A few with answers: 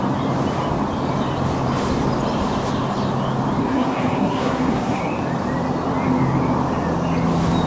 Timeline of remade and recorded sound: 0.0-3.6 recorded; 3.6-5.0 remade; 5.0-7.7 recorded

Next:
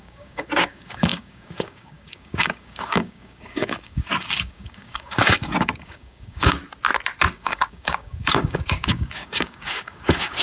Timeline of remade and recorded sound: 0.0-6.6 remade; 6.6-7.3 recorded; 7.3-10.4 remade